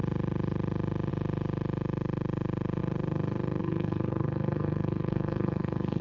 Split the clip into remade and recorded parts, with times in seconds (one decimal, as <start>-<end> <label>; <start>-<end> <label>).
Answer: 0.0-3.6 recorded; 3.6-6.0 remade